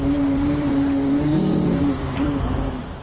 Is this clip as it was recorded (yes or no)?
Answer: no